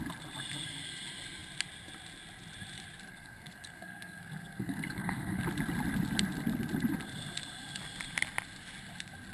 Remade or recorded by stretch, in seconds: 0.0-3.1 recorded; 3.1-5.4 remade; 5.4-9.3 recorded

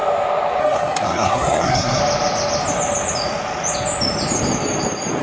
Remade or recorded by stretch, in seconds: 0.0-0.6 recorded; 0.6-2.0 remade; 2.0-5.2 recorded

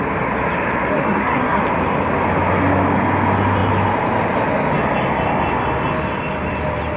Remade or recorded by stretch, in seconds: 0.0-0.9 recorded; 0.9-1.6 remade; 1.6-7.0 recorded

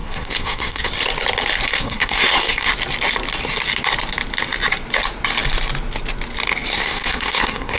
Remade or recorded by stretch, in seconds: 0.0-0.9 remade; 0.9-1.7 recorded; 1.7-2.7 remade; 2.7-6.7 recorded; 6.7-7.8 remade